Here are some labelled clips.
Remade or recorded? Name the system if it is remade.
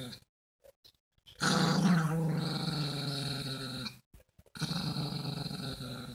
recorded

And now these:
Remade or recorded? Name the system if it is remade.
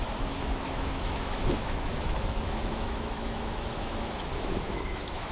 remade, autoencoder, DAC-VAE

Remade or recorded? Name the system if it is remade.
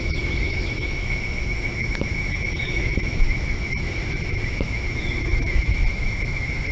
remade, autoencoder, DAC-VAE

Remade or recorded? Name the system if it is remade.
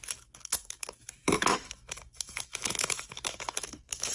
remade, autoencoder, DAC-VAE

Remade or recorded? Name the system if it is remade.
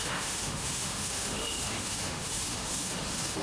remade, autoencoder, DAC-VAE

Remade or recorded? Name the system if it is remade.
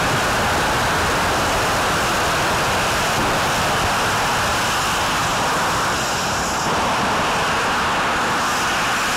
recorded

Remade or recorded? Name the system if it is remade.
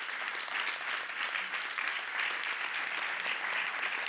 recorded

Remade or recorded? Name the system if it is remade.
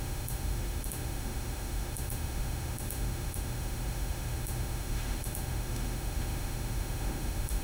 remade, autoencoder, DAC-VAE